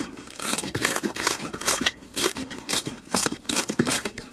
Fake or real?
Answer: fake